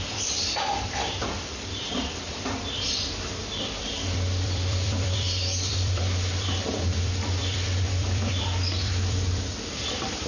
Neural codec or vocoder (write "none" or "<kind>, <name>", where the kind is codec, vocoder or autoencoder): vocoder, BigVGAN v2